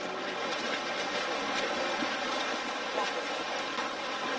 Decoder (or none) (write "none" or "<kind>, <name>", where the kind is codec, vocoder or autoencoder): none